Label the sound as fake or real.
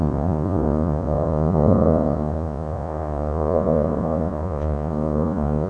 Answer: fake